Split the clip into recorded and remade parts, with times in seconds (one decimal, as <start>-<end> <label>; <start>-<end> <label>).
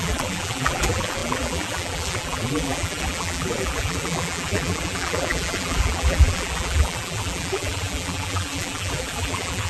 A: 0.0-9.7 remade